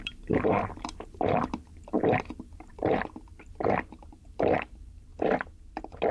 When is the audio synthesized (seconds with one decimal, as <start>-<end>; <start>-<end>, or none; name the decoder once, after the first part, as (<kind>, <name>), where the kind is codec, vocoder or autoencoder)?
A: 0.0-5.1 (vocoder, BigVGAN v2)